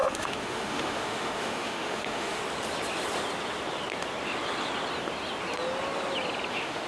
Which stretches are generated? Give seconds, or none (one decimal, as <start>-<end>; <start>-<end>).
0.0-2.4; 6.5-6.9